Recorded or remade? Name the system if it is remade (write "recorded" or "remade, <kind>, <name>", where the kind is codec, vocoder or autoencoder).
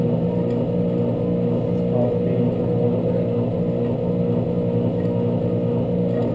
recorded